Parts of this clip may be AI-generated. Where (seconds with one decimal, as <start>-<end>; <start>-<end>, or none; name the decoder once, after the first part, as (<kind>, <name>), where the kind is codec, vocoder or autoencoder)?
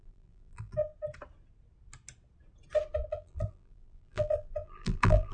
0.0-0.9 (vocoder, BigVGAN v2); 3.1-5.3